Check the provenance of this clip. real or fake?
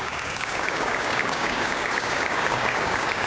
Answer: fake